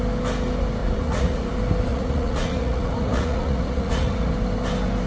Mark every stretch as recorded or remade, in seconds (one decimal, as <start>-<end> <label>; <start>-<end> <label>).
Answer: 0.0-0.8 recorded; 0.8-1.5 remade; 1.5-1.9 recorded; 1.9-4.3 remade; 4.3-5.1 recorded